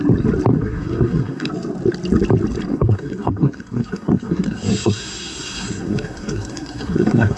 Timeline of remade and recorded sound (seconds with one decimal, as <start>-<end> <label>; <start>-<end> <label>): 0.0-0.5 recorded; 0.5-1.5 remade; 1.5-2.7 recorded; 2.7-7.4 remade